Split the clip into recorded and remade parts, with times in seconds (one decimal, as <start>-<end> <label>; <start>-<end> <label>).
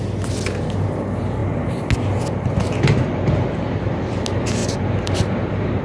0.0-4.6 recorded; 4.6-5.8 remade